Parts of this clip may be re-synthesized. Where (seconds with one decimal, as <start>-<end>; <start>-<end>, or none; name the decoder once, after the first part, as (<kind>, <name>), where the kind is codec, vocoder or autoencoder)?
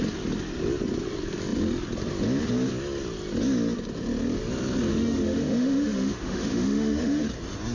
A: 4.9-7.2 (autoencoder, DAC-VAE)